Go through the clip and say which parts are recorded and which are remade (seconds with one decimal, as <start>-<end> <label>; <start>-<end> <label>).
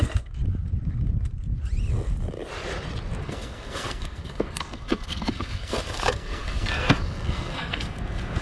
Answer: 0.0-0.4 remade; 0.4-3.2 recorded; 3.2-8.4 remade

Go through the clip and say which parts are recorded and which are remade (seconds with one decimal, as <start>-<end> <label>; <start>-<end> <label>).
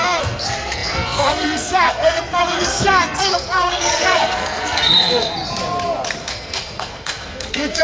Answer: 0.0-5.3 remade; 5.3-6.2 recorded; 6.2-7.8 remade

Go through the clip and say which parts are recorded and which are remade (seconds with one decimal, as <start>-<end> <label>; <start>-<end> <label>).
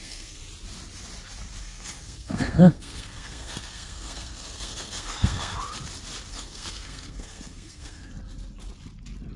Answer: 0.0-0.4 remade; 0.4-1.6 recorded; 1.6-5.5 remade; 5.5-6.3 recorded; 6.3-8.1 remade; 8.1-9.4 recorded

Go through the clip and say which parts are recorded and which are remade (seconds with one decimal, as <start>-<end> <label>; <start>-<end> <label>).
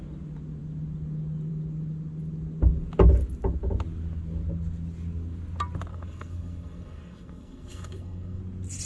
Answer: 0.0-5.9 recorded; 5.9-8.4 remade; 8.4-8.9 recorded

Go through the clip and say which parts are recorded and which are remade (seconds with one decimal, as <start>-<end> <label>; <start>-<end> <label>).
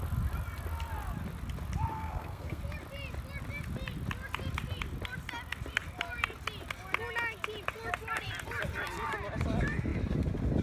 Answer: 0.0-1.9 recorded; 1.9-2.6 remade; 2.6-10.6 recorded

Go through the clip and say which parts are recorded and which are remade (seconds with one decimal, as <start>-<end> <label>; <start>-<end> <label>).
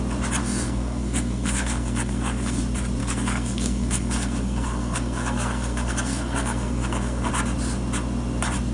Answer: 0.0-0.4 recorded; 0.4-2.6 remade; 2.6-3.0 recorded; 3.0-7.3 remade; 7.3-8.7 recorded